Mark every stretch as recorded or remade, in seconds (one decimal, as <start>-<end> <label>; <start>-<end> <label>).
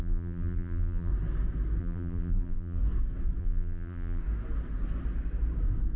0.0-1.1 remade; 1.1-1.8 recorded; 1.8-2.8 remade; 2.8-3.4 recorded; 3.4-4.2 remade; 4.2-6.0 recorded